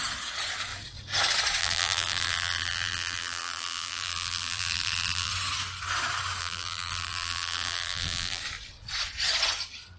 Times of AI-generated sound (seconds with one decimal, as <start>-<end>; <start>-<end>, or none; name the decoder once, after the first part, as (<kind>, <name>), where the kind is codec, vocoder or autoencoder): 1.6-5.3 (vocoder, BigVGAN v2); 6.4-8.4